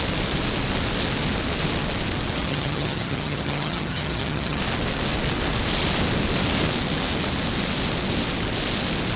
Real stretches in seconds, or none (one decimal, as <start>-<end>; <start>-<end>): 0.0-2.4; 4.6-9.2